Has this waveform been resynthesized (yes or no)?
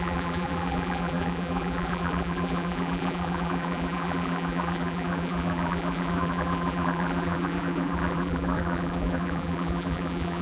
yes